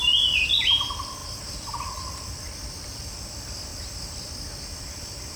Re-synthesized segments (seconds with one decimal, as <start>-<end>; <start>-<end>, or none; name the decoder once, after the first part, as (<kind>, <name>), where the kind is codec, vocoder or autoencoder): 1.2-1.9 (vocoder, BigVGAN v2)